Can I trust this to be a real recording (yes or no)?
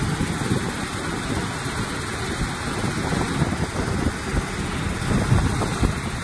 yes